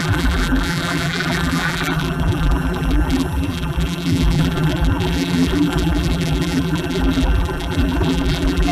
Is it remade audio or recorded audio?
remade